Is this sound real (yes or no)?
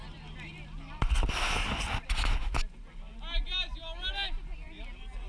yes